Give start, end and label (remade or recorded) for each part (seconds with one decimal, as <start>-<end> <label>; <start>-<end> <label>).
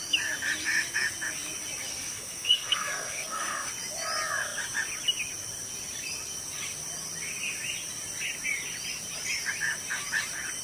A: 0.0-1.9 recorded; 1.9-3.7 remade; 3.7-10.6 recorded